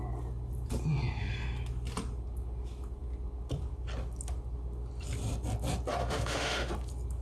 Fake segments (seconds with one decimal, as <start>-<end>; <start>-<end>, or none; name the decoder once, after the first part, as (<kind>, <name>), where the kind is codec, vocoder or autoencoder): 6.0-6.7 (autoencoder, DAC-VAE)

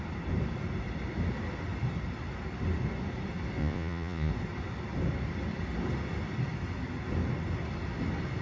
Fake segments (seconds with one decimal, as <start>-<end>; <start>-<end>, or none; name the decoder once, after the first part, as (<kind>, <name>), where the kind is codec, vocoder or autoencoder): 3.6-4.3 (vocoder, Vocos)

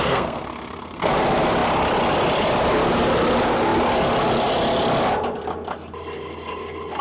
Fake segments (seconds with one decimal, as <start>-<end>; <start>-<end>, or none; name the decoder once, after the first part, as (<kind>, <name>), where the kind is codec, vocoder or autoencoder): 0.0-1.1 (codec, SNAC)

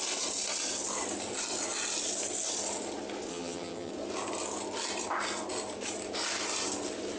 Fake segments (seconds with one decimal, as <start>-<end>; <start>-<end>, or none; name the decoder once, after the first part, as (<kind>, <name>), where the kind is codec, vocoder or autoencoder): 3.3-3.9 (vocoder, HiFi-GAN)

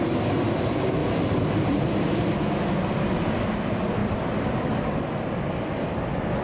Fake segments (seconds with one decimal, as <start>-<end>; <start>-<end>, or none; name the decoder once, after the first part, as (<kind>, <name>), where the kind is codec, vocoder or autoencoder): 1.0-2.0 (vocoder, BigVGAN v2); 4.0-4.7